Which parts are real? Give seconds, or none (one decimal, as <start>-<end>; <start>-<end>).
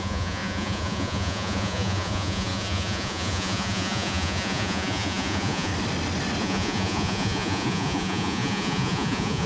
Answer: 5.7-6.4